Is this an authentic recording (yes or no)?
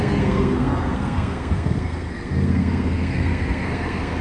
no